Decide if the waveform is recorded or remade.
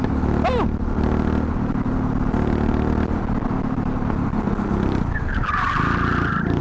recorded